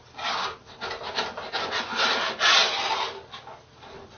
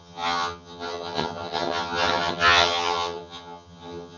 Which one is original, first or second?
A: first